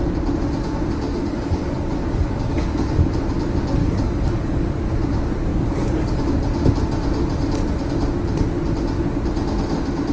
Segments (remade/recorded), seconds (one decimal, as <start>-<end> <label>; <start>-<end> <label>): 0.0-1.1 recorded; 1.1-3.1 remade; 3.1-3.8 recorded; 3.8-4.9 remade; 4.9-5.5 recorded; 5.5-6.2 remade; 6.2-10.1 recorded